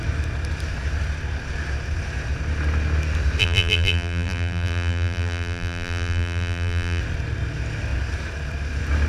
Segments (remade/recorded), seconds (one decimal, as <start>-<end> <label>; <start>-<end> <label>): 0.0-3.4 recorded; 3.4-7.0 remade; 7.0-9.1 recorded